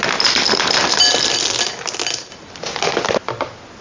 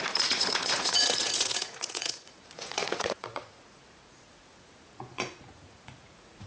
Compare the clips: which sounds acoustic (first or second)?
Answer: first